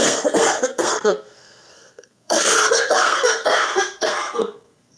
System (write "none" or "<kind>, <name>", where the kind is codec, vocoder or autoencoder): codec, SNAC